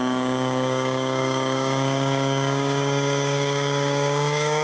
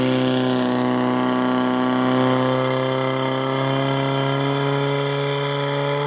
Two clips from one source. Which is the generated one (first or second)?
first